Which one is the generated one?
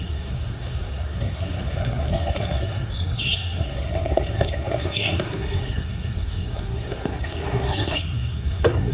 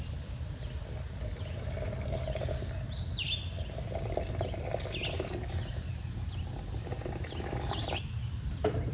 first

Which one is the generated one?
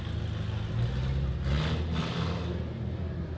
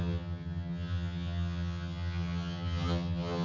second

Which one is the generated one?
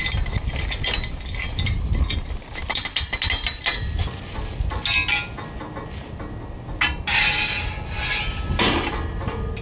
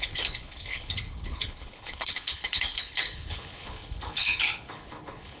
second